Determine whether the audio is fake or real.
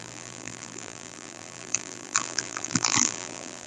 fake